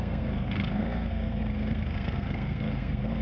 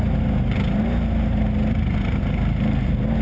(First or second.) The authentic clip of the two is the second